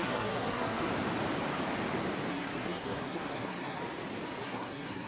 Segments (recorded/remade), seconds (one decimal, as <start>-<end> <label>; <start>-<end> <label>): 0.0-0.9 remade; 0.9-2.3 recorded; 2.3-3.8 remade; 3.8-4.4 recorded; 4.4-5.1 remade